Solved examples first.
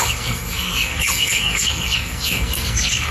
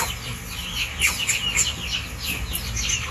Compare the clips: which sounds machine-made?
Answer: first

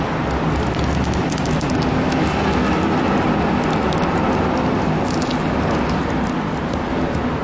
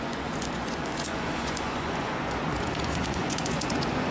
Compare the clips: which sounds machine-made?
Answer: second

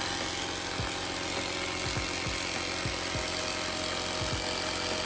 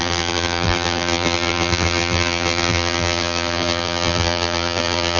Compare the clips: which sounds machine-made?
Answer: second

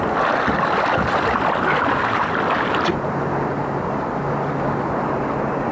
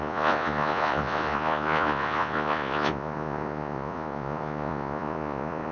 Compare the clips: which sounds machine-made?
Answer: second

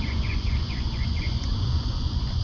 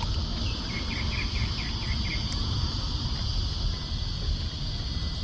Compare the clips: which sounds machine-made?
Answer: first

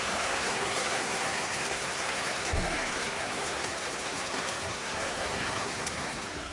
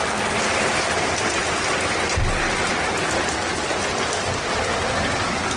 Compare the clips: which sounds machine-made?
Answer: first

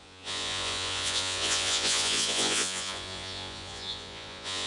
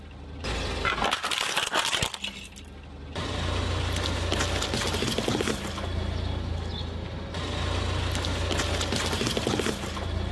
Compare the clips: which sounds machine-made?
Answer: first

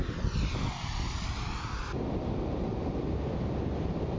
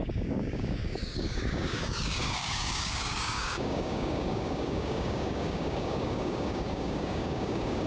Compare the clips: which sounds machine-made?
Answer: second